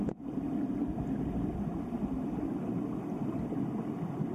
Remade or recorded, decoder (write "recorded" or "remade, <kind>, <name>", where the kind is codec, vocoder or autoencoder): recorded